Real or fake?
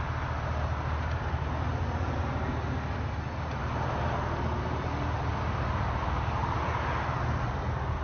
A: real